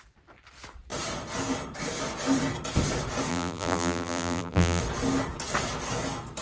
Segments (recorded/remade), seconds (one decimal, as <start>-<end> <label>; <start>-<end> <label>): 0.0-3.3 recorded; 3.3-4.8 remade; 4.8-6.4 recorded